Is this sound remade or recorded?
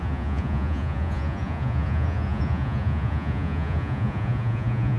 remade